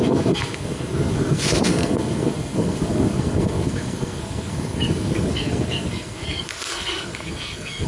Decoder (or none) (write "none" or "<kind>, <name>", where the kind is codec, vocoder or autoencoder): codec, SNAC